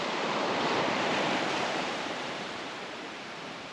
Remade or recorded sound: remade